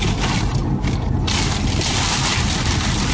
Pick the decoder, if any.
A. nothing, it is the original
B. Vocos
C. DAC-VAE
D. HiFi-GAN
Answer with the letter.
A